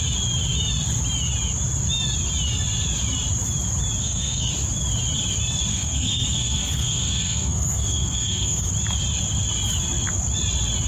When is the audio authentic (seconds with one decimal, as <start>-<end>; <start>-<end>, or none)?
0.0-4.0; 4.5-5.7; 8.7-10.9